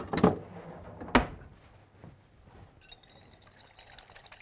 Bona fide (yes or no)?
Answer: yes